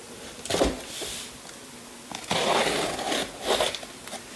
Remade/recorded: recorded